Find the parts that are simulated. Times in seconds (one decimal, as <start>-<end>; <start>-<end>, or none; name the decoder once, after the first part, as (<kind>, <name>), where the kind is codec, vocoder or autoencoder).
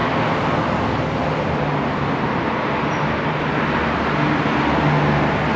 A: none